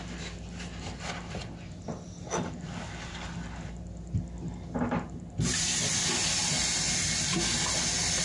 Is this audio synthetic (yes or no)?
no